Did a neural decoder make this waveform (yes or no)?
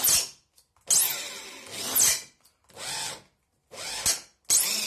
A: no